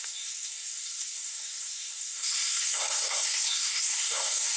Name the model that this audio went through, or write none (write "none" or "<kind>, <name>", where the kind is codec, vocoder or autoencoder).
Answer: codec, SNAC